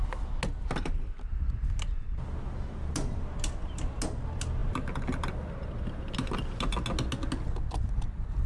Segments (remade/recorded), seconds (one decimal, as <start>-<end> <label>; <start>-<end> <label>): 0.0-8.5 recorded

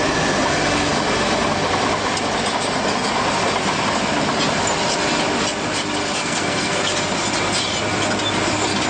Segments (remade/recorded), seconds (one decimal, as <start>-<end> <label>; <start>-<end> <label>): 0.0-6.0 recorded; 6.0-6.9 remade; 6.9-8.9 recorded

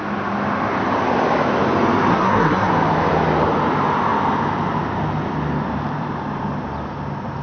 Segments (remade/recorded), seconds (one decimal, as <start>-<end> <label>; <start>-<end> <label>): 0.0-2.1 recorded; 2.1-2.7 remade; 2.7-7.4 recorded